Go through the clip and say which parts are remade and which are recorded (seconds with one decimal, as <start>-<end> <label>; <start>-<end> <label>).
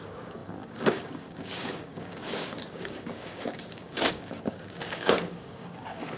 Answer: 0.0-6.2 remade